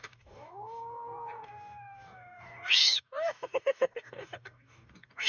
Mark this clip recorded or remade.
remade